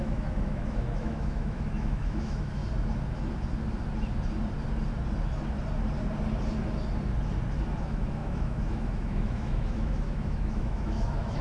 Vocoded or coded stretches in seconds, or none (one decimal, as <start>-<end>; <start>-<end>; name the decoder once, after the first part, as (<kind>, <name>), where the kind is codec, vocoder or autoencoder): 0.0-2.6 (autoencoder, DAC-VAE); 7.8-11.4